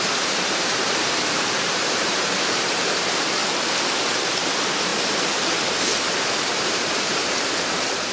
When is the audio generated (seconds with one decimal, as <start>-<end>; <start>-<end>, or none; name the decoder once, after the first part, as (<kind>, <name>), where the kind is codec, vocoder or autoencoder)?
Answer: 0.0-3.4 (vocoder, BigVGAN v2); 4.0-4.9; 6.1-8.1